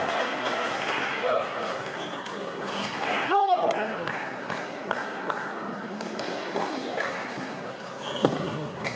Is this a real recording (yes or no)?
no